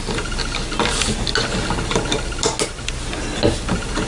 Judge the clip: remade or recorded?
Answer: recorded